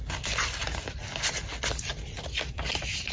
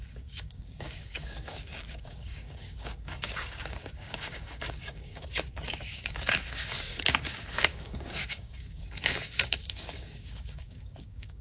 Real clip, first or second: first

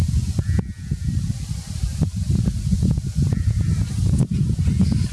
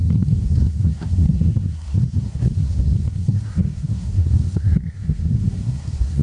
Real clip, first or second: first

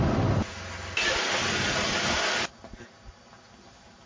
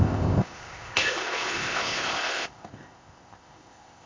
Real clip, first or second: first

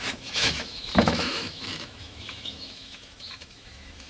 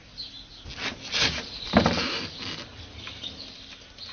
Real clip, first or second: second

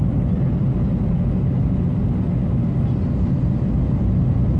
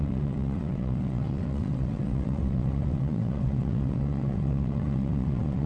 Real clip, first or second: first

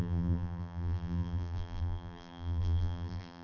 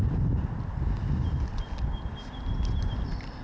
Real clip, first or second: second